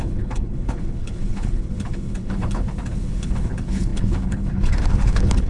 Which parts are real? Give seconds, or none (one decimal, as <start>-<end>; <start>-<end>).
none